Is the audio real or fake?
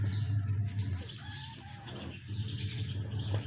real